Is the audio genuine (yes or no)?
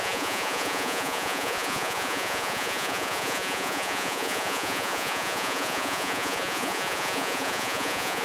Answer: no